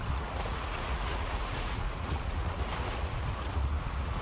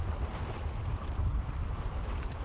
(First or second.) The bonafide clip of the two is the second